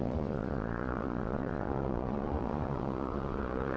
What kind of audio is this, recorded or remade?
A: remade